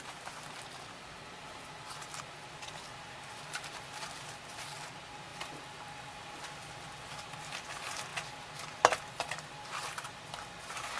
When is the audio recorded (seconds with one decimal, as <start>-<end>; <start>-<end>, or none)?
0.0-11.0